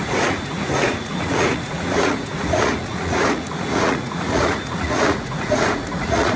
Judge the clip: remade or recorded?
remade